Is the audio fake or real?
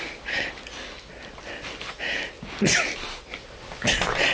real